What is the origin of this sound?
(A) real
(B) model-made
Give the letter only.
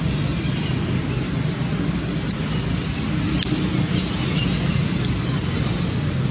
A